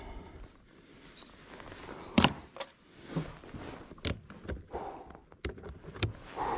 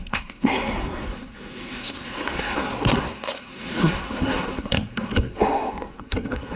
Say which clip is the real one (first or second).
first